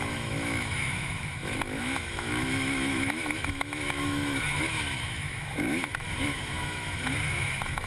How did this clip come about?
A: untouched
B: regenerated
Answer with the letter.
B